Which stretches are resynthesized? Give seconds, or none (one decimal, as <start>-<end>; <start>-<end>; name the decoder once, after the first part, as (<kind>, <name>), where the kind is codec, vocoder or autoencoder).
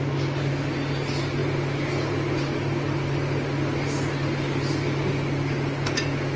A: none